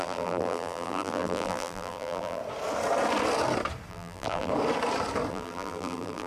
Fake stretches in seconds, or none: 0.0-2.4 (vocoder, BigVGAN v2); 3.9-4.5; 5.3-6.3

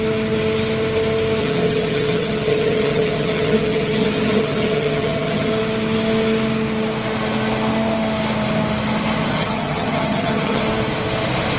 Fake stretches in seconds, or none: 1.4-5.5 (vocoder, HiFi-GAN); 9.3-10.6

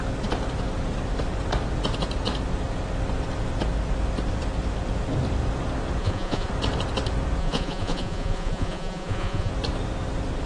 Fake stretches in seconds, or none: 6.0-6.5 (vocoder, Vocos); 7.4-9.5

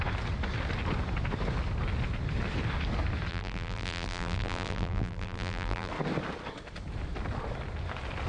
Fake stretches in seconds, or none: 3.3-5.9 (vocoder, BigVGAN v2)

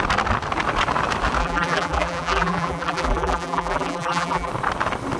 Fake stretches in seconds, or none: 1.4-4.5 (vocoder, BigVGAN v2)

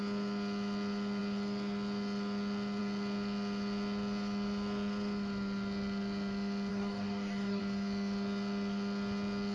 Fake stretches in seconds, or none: 6.7-7.6 (codec, DAC)